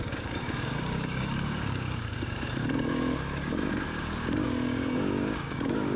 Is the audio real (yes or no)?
no